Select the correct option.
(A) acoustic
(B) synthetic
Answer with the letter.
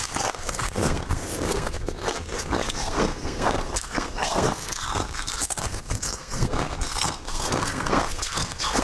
B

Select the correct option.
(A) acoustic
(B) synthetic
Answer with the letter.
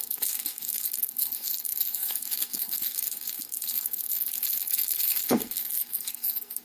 B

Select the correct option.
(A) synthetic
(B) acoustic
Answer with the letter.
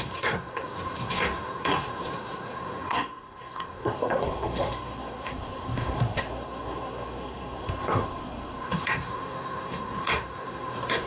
A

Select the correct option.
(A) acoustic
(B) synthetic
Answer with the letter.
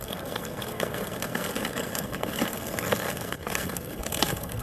B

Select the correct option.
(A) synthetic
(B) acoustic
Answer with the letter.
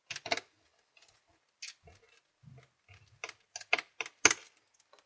B